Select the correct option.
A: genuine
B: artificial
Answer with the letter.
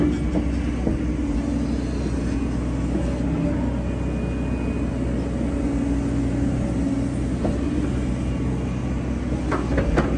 A